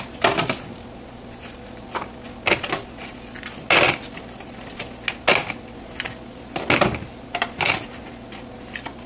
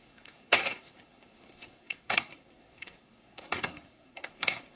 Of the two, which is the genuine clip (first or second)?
first